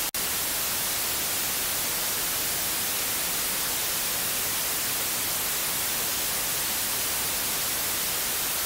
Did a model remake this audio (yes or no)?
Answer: no